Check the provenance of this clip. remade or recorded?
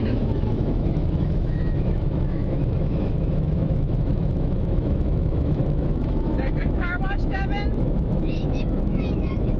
remade